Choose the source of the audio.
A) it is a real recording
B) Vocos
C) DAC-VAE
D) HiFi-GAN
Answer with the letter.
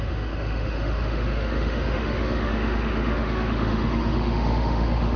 C